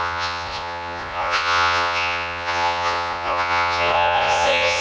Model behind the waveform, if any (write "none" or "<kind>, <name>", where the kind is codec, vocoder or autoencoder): vocoder, Vocos